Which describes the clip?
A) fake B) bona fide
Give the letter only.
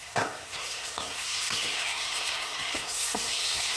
A